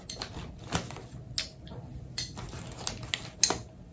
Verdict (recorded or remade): recorded